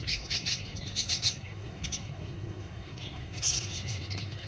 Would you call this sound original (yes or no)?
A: no